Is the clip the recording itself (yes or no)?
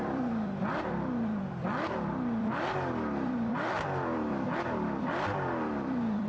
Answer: no